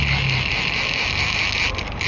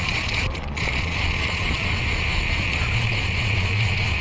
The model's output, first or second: second